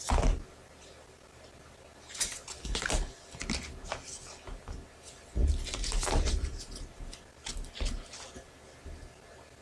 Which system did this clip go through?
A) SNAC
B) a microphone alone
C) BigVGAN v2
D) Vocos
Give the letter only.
B